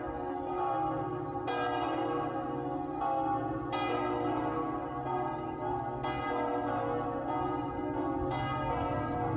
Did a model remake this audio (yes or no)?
no